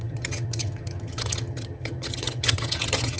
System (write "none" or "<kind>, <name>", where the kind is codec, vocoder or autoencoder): vocoder, HiFi-GAN